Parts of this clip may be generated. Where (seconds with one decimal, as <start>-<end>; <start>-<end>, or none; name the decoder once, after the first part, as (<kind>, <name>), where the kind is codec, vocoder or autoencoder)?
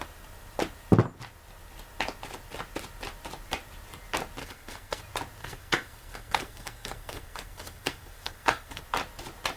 4.4-5.0 (codec, SNAC); 5.4-8.8